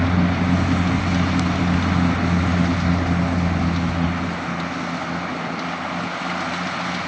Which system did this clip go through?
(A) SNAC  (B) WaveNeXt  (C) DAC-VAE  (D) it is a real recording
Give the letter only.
D